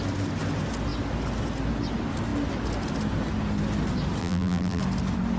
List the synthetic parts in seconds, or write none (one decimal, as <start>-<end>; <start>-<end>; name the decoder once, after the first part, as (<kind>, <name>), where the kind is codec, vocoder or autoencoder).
4.2-4.8 (vocoder, BigVGAN v2)